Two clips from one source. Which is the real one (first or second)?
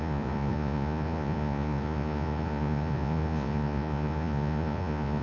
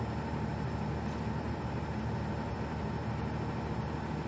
second